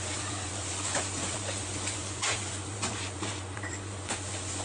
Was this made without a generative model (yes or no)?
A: no